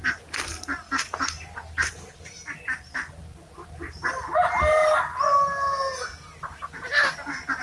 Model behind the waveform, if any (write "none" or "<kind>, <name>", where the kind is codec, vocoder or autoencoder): none